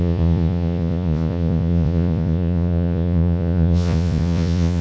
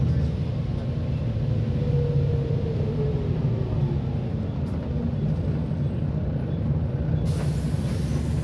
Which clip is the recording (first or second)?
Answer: second